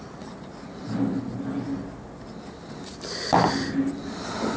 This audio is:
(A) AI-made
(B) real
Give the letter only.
B